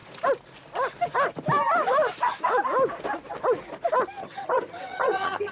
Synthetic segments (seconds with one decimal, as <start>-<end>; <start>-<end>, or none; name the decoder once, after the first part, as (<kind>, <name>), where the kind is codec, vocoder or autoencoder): 4.2-5.5 (vocoder, HiFi-GAN)